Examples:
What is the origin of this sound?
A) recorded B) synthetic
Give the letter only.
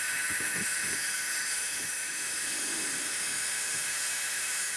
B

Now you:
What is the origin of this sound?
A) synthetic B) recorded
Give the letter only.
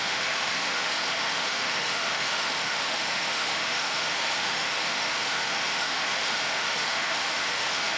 A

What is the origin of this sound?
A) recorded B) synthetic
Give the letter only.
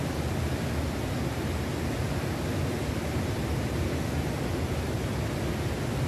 A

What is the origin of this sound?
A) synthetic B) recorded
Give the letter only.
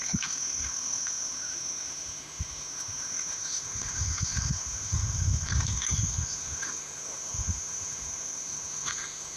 A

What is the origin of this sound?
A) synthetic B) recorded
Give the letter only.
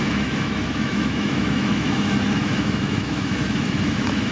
A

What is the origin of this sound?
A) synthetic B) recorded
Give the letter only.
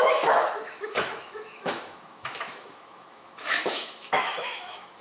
A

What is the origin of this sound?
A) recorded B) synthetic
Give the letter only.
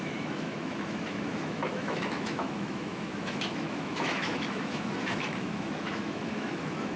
B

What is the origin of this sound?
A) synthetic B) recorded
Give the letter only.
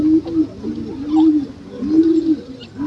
B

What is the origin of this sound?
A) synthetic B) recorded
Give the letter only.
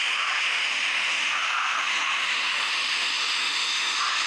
A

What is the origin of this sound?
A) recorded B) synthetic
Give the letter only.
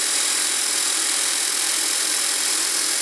A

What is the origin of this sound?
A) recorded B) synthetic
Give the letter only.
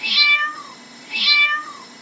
B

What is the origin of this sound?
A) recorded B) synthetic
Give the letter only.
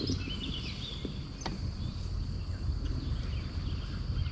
A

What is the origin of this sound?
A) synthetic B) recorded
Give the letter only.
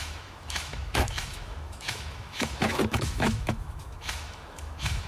A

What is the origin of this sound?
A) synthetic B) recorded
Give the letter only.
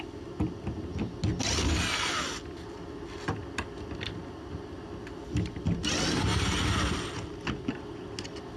B